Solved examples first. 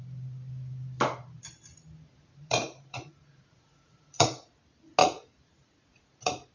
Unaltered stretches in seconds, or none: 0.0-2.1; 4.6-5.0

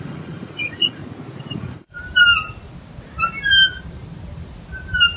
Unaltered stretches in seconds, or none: 1.0-1.6; 2.0-5.2

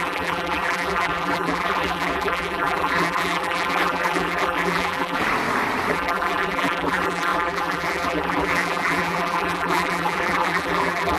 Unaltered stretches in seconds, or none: 5.2-5.9

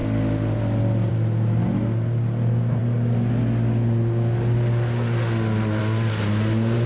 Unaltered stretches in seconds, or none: 0.0-6.9